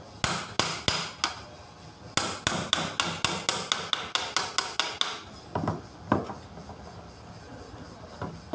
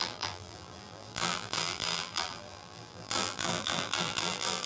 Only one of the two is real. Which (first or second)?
first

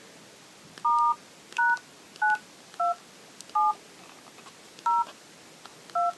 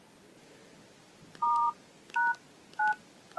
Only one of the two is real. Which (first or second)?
first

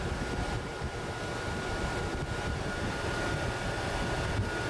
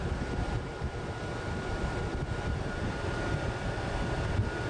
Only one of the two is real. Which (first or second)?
first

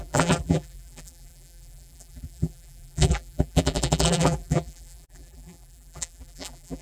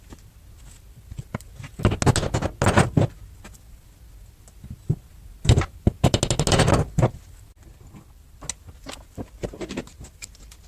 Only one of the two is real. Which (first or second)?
second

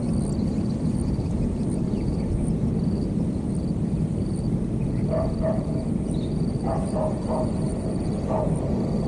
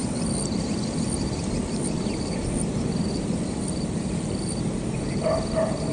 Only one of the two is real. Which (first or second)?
first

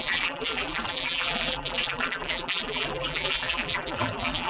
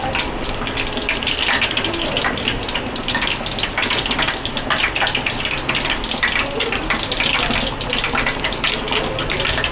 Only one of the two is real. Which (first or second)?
second